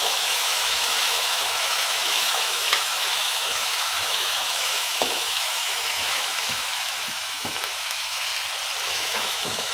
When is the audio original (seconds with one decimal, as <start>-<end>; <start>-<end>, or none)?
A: 8.3-8.8